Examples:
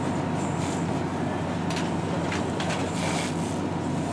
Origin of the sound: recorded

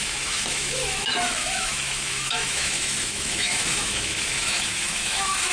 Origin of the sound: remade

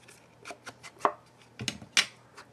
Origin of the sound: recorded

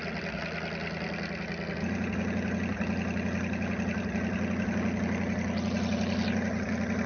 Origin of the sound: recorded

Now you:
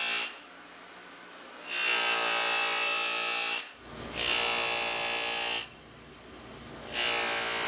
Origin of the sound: recorded